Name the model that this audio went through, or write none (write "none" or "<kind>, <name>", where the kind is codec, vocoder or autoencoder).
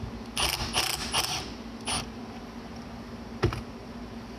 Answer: none